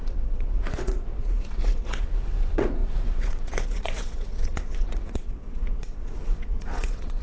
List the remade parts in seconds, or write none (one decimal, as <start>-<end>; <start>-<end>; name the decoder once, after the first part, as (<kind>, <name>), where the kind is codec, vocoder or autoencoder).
0.0-7.2 (vocoder, WaveNeXt)